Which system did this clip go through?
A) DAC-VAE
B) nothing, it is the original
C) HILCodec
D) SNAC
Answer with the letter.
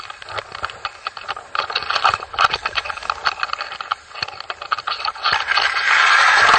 B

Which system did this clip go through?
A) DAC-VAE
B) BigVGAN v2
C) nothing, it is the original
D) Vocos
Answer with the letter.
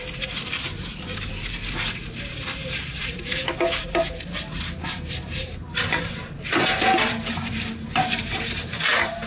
B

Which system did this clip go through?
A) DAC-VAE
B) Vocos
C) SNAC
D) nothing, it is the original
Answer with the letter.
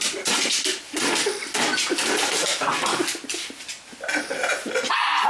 D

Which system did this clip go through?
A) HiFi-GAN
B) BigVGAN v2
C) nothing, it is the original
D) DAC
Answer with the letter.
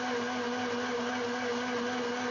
C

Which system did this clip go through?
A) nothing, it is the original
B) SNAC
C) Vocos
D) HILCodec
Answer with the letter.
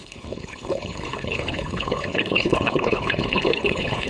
D